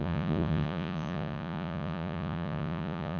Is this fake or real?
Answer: fake